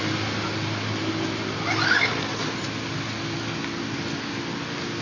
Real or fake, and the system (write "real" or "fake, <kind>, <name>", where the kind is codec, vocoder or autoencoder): real